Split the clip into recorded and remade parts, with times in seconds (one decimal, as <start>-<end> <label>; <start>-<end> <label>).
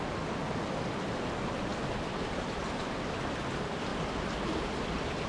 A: 0.0-1.7 remade; 1.7-2.4 recorded; 2.4-3.9 remade; 3.9-4.7 recorded; 4.7-5.3 remade